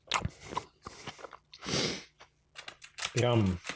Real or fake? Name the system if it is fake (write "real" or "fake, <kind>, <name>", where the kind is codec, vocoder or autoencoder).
real